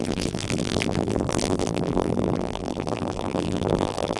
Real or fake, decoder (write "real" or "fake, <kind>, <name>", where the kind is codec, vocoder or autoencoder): fake, vocoder, BigVGAN v2